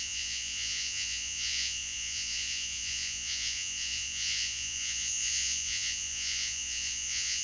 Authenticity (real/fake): fake